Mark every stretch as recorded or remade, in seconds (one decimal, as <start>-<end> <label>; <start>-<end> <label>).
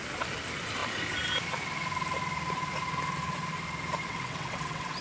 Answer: 0.0-4.0 recorded; 4.0-5.0 remade